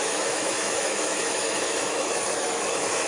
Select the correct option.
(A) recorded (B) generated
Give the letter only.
B